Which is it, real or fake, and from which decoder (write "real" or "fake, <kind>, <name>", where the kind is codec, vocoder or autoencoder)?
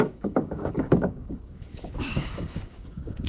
fake, codec, DAC